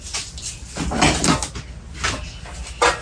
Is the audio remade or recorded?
recorded